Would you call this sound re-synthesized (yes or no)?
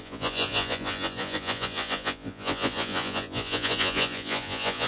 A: yes